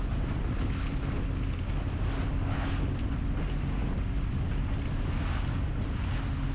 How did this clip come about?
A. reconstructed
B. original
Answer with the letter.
B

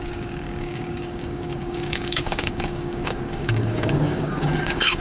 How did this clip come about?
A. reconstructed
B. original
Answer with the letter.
A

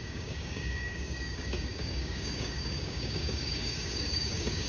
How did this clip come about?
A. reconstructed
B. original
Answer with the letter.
A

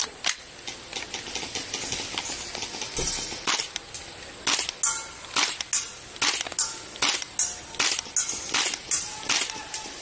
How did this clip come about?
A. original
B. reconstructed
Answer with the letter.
A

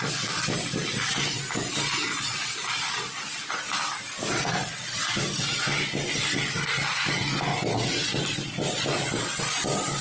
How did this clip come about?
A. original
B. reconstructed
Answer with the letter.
A